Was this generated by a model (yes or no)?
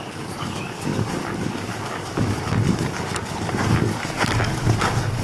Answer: yes